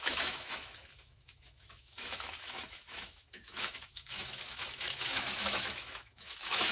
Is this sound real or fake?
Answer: fake